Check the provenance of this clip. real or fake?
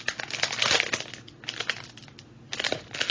real